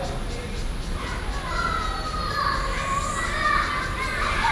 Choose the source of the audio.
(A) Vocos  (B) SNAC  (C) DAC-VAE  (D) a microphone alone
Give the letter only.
D